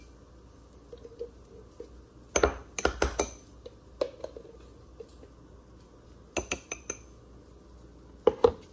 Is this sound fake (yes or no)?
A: no